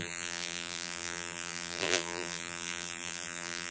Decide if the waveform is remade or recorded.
remade